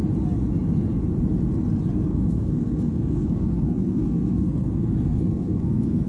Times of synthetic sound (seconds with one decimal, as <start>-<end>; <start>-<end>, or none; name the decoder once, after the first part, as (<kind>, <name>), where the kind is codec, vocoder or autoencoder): 2.1-6.1 (codec, SNAC)